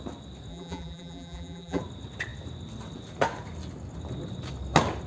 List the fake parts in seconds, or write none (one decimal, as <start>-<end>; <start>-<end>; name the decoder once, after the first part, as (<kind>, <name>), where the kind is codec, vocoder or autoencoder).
0.5-1.8 (vocoder, BigVGAN v2)